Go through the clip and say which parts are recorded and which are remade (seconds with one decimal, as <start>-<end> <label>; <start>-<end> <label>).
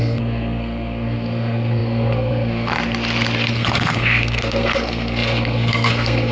0.0-2.7 remade; 2.7-3.5 recorded; 3.5-6.3 remade